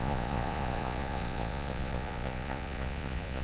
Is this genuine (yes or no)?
no